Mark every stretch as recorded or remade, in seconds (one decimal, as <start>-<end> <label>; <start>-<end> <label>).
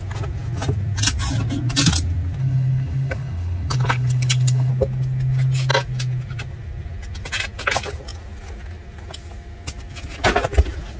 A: 0.0-2.4 recorded; 2.4-4.7 remade; 4.7-11.0 recorded